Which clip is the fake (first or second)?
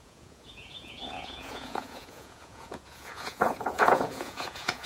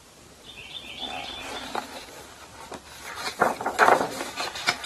first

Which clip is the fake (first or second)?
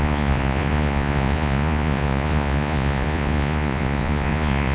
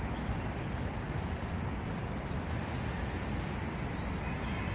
first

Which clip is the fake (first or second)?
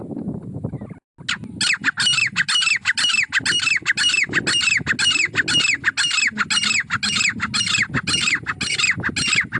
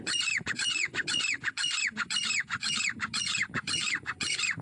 second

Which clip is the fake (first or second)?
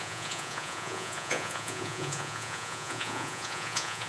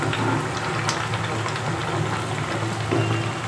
first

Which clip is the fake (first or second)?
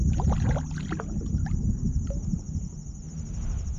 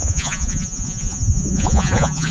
second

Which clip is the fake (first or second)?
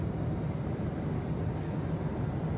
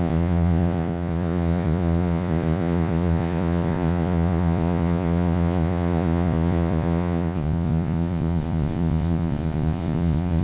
second